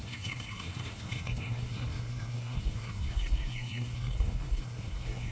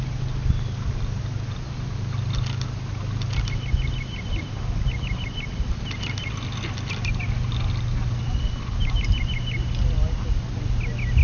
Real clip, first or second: second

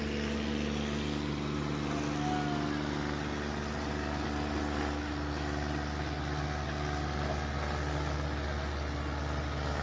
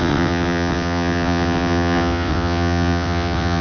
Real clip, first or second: first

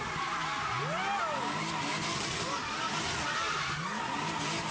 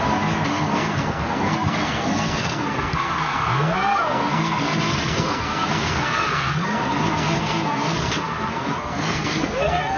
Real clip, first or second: first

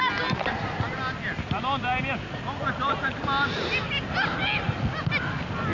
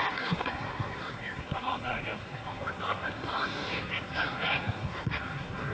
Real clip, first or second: first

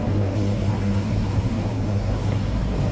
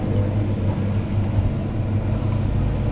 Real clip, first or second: second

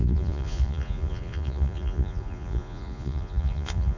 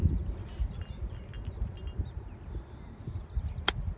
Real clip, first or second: second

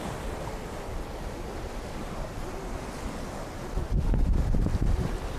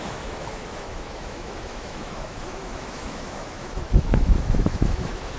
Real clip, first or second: first